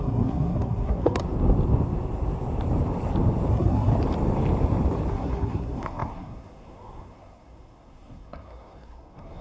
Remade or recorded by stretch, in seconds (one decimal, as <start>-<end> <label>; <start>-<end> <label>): 0.0-1.2 remade; 1.2-3.5 recorded; 3.5-3.9 remade; 3.9-5.1 recorded; 5.1-9.4 remade